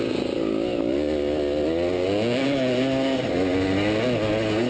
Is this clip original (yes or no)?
yes